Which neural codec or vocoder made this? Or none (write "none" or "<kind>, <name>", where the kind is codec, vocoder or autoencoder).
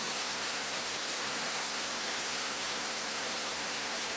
codec, SNAC